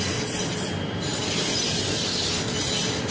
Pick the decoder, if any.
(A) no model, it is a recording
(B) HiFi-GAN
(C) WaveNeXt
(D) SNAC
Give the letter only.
A